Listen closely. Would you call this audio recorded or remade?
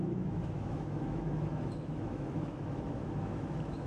remade